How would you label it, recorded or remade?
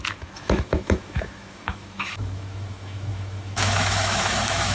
remade